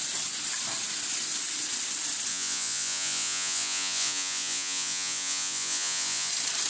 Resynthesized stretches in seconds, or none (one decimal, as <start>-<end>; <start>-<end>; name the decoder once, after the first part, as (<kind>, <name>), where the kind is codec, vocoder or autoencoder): 2.3-6.3 (vocoder, Vocos)